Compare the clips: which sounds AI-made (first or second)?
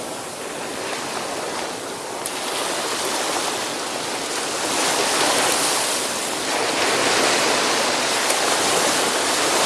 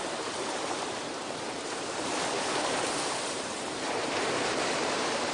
second